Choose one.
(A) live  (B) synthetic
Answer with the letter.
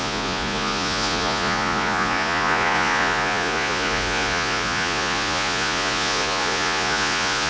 B